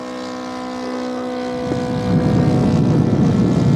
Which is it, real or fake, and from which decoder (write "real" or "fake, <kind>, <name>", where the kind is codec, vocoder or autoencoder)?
real